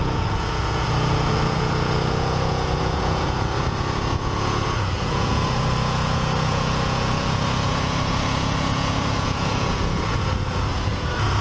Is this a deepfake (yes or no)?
yes